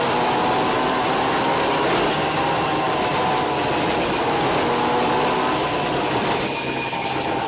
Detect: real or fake real